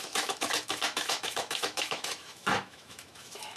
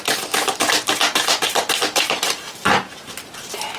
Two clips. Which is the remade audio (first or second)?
first